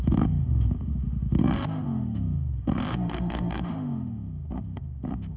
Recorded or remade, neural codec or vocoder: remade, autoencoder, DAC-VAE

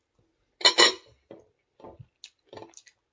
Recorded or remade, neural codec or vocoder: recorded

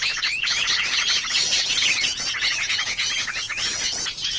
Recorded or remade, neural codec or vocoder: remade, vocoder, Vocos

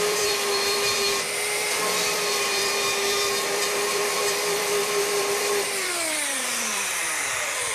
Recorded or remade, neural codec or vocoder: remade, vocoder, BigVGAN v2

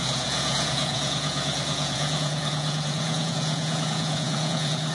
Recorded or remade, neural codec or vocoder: remade, vocoder, Vocos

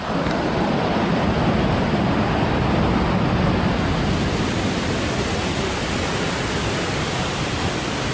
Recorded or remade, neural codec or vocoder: recorded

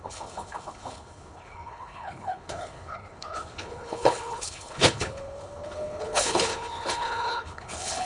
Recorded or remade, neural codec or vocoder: remade, codec, HILCodec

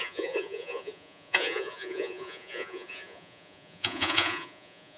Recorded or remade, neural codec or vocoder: remade, vocoder, Vocos